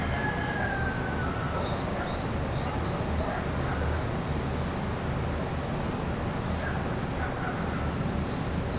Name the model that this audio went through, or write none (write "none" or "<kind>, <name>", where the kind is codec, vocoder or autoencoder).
none